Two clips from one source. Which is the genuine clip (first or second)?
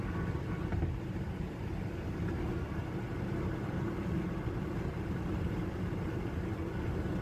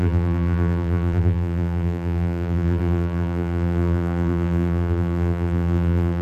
first